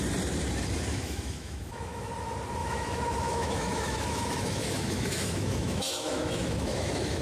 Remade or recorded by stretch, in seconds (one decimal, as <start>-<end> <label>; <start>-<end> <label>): 0.0-0.9 recorded; 0.9-2.1 remade; 2.1-2.6 recorded; 2.6-7.2 remade